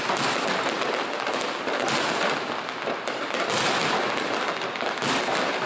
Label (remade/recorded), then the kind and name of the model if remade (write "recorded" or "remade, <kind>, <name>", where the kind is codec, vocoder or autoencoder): recorded